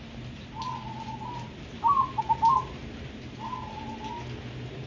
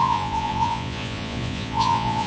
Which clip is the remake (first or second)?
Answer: second